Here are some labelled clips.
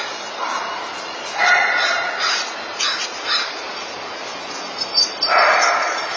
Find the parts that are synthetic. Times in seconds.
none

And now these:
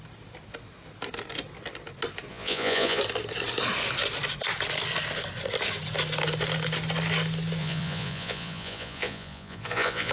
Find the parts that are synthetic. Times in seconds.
2.3-3.0 (vocoder, Vocos); 7.6-10.1

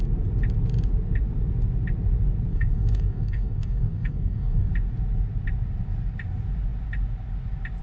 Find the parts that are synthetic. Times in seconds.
2.5-4.7 (codec, DAC)

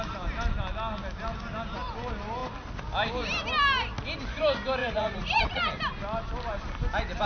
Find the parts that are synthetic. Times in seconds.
4.8-5.6 (vocoder, Vocos)

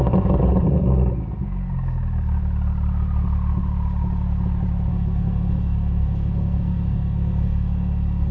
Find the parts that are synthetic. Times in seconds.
4.9-8.3 (codec, SNAC)

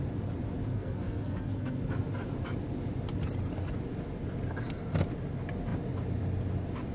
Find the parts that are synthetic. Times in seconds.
0.7-2.0 (codec, SNAC)